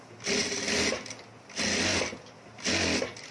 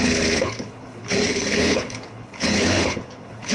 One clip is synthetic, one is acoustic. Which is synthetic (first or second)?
second